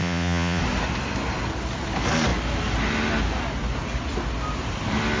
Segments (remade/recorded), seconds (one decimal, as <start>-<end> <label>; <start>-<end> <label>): 0.0-0.6 remade; 0.6-5.2 recorded

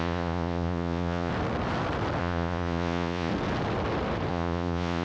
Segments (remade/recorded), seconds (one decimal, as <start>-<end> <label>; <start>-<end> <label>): 0.0-1.3 remade; 1.3-2.2 recorded; 2.2-3.3 remade; 3.3-4.3 recorded; 4.3-5.0 remade

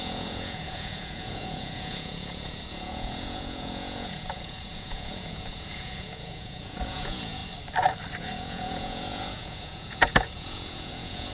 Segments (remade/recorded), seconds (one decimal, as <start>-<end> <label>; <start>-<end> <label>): 0.0-7.4 remade; 7.4-8.2 recorded; 8.2-11.3 remade

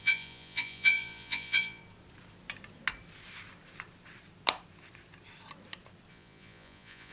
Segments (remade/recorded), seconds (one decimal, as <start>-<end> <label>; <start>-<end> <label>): 0.0-1.8 remade; 1.8-6.1 recorded; 6.1-7.1 remade

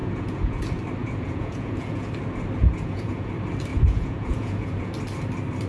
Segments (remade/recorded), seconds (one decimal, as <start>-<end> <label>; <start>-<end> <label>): 0.0-0.6 remade; 0.6-1.0 recorded; 1.0-2.1 remade; 2.1-2.6 recorded; 2.6-3.3 remade; 3.3-3.7 recorded; 3.7-4.9 remade; 4.9-5.7 recorded